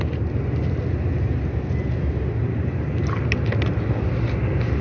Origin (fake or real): real